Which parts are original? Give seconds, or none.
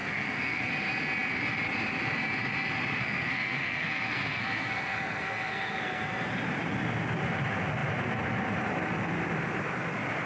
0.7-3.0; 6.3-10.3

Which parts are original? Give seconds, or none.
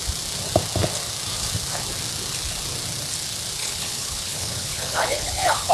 0.0-3.6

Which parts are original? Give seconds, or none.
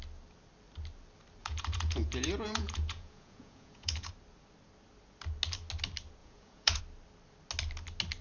0.0-1.4; 4.1-6.2; 6.8-8.2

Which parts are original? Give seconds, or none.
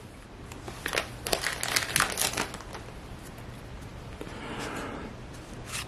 0.0-5.9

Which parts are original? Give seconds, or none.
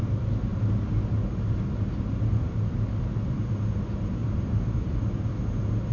0.0-4.2; 5.0-5.9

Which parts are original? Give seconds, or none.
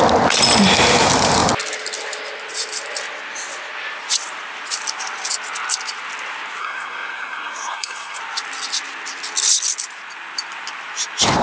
0.0-6.6; 8.2-11.4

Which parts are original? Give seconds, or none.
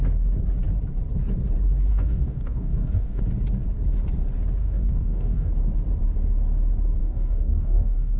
0.0-1.9; 3.2-4.6; 5.5-7.0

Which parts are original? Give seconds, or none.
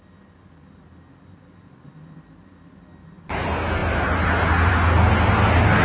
0.0-5.8